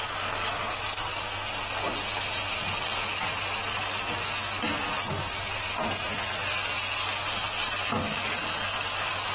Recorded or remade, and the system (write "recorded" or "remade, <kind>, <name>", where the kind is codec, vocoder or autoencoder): recorded